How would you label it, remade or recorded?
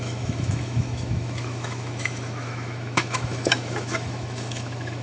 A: remade